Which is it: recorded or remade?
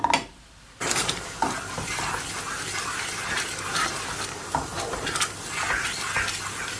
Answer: recorded